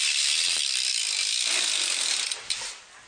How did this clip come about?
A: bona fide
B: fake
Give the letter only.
A